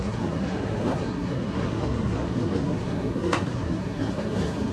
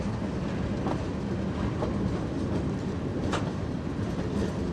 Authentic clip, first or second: second